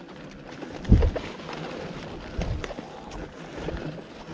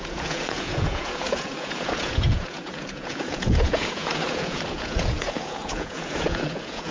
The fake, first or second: second